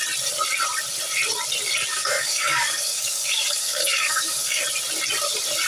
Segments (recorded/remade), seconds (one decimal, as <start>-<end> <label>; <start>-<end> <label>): 0.0-1.9 recorded; 1.9-4.6 remade; 4.6-5.7 recorded